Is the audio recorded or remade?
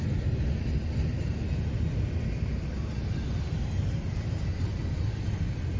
recorded